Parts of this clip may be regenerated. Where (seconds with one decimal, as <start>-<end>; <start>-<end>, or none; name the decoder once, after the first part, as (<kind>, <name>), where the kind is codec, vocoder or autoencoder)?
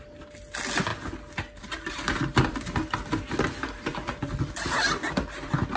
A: none